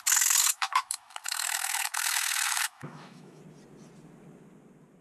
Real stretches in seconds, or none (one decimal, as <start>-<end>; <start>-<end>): 0.0-0.4; 3.4-5.0

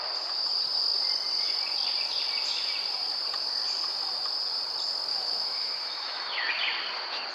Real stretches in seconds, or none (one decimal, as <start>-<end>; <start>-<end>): 0.0-5.1; 6.5-7.3

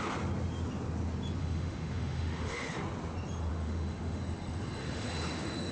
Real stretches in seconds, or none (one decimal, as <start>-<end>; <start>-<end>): 0.0-1.4; 2.7-3.5; 4.2-4.8

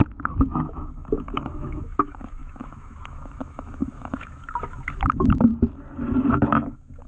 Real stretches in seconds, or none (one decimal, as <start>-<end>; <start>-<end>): 5.5-6.3

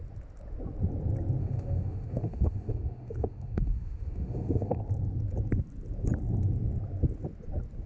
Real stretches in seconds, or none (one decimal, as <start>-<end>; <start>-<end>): 0.0-1.4; 4.8-7.9

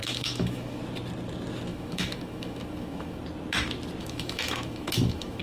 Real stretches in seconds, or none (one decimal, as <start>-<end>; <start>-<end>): 0.8-1.7; 3.2-4.0